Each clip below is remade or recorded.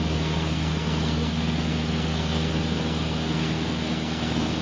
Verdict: remade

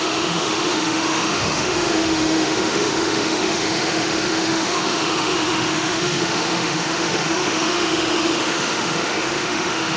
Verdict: remade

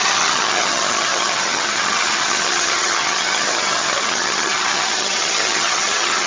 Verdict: remade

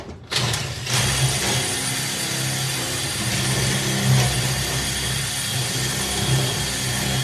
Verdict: recorded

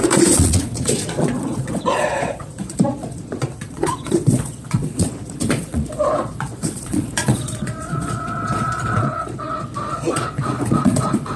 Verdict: remade